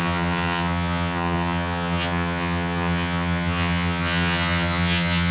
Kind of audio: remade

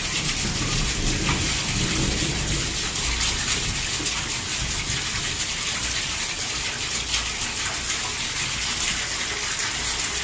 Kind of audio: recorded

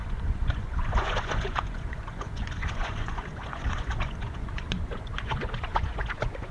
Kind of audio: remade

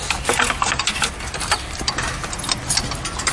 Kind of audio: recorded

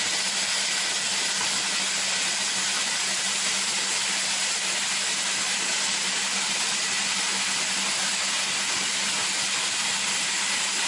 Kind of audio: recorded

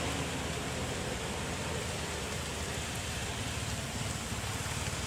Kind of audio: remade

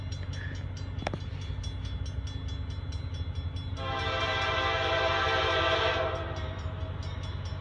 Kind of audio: recorded